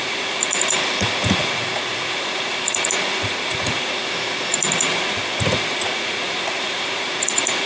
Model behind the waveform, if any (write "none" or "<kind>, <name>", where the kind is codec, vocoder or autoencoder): vocoder, Vocos